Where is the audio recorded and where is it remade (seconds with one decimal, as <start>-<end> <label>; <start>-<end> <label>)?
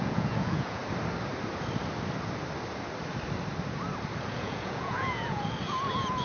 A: 0.0-0.8 remade; 0.8-4.3 recorded; 4.3-6.2 remade